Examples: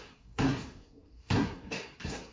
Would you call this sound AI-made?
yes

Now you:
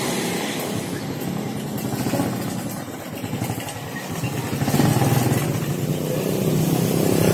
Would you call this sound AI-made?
no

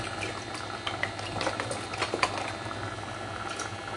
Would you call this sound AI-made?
no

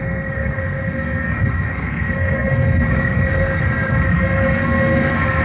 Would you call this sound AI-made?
yes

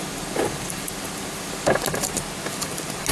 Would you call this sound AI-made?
no